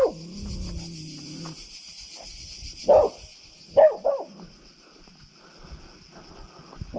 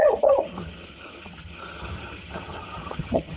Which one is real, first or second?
first